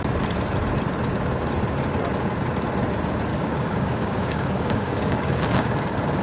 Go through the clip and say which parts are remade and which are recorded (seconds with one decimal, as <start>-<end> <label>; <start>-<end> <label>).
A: 0.0-3.3 recorded; 3.3-5.7 remade; 5.7-6.2 recorded